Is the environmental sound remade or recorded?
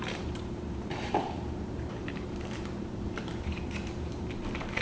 remade